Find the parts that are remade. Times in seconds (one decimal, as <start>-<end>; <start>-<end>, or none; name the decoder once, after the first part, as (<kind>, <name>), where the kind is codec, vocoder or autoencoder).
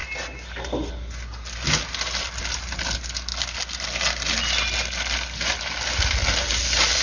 none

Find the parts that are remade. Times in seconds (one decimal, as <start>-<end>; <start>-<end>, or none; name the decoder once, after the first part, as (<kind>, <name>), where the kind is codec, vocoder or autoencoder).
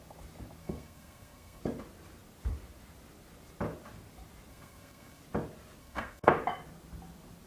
0.6-1.6 (codec, SNAC); 4.5-5.2; 5.8-6.3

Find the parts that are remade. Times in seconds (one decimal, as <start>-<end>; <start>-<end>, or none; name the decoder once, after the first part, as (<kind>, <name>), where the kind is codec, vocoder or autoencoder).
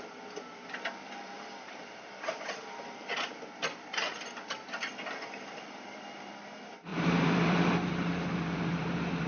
0.0-9.3 (vocoder, BigVGAN v2)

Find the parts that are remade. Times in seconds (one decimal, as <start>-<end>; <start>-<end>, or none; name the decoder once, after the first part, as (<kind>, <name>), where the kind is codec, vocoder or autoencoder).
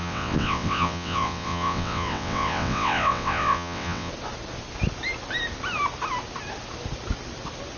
0.0-4.1 (vocoder, WaveNeXt)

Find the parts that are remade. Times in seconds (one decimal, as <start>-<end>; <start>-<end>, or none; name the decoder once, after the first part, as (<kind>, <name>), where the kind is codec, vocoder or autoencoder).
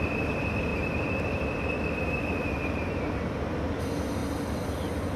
0.0-4.2 (vocoder, BigVGAN v2)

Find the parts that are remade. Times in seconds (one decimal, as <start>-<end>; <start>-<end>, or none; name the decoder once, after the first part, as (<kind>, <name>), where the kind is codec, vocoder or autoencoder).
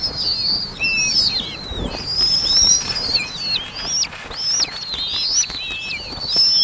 1.1-3.6 (vocoder, BigVGAN v2)